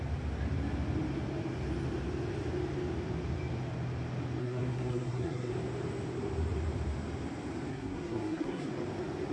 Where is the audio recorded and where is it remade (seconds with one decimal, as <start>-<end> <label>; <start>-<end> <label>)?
0.0-4.4 recorded; 4.4-5.5 remade; 5.5-7.7 recorded; 7.7-8.7 remade; 8.7-9.3 recorded